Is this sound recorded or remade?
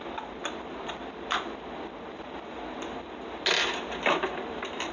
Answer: recorded